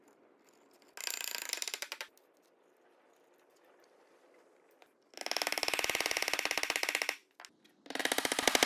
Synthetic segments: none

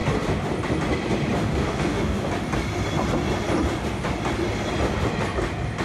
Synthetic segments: 1.4-2.3 (codec, DAC)

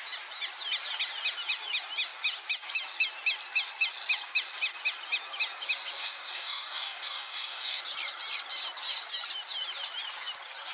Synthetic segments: 6.0-7.8 (codec, DAC)

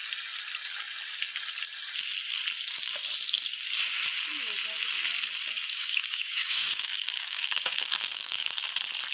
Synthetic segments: 5.7-8.6 (codec, DAC)

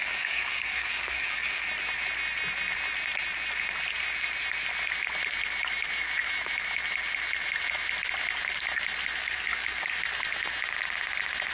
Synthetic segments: 0.0-1.7 (codec, DAC); 9.2-10.0

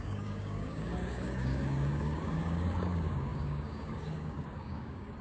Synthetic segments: 0.0-5.2 (codec, DAC)